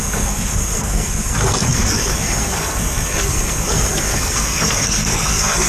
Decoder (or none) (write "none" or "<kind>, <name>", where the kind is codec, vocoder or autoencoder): codec, SNAC